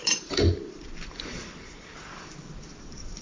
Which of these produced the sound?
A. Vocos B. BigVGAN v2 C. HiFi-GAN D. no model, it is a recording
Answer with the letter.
B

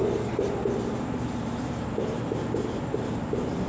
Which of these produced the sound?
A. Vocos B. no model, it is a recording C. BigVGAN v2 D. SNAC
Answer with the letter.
B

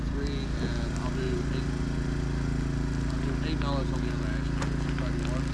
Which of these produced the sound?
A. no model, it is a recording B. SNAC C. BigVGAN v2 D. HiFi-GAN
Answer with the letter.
A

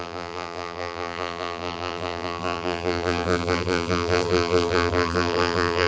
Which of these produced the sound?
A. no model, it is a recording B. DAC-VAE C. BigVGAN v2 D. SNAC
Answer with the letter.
C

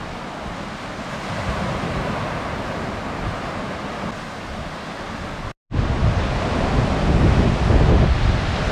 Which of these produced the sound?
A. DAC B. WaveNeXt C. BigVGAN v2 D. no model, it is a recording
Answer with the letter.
D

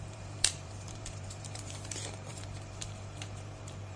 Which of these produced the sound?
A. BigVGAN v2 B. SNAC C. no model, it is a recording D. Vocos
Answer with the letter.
A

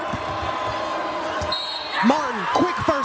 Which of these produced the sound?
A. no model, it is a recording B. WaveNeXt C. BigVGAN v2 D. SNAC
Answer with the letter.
A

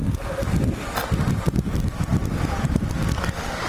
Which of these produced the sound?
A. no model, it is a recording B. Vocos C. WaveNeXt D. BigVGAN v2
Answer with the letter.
A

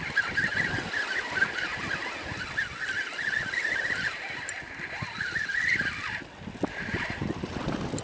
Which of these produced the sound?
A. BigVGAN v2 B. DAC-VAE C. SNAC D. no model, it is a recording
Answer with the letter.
D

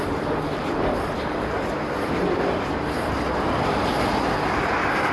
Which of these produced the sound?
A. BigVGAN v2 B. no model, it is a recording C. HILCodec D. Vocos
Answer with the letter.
A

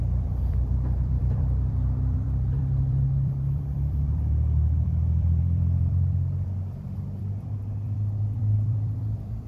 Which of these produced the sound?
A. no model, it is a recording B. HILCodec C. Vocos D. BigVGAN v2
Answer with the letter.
D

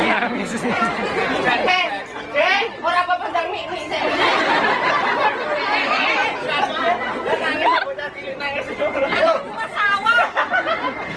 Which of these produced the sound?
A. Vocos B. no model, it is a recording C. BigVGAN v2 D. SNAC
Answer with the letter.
C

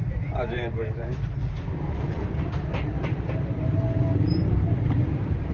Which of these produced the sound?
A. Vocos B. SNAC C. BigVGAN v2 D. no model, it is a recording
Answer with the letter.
C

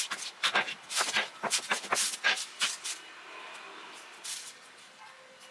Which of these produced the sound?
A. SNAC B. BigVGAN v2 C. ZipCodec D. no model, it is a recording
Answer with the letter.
B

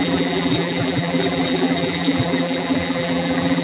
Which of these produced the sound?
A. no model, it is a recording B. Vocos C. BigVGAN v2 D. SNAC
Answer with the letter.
C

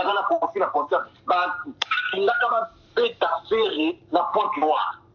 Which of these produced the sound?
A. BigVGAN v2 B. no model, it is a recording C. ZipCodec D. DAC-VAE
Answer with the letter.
A